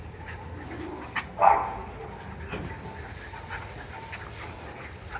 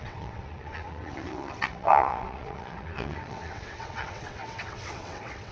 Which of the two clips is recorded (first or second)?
first